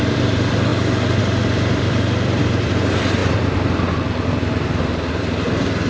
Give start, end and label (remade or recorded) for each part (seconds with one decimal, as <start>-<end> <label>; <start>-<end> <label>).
0.0-0.7 remade; 0.7-1.2 recorded; 1.2-3.2 remade; 3.2-5.1 recorded; 5.1-5.9 remade